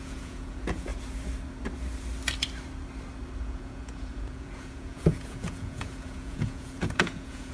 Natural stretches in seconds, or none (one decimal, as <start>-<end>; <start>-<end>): 0.9-3.4